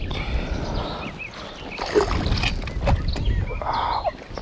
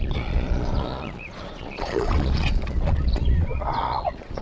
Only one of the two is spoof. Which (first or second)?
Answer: second